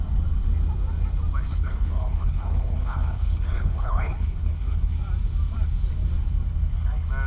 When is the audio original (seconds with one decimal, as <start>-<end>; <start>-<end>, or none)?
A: 0.0-1.5; 4.9-7.3